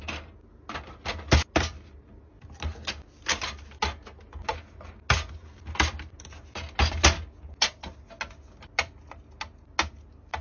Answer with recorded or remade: recorded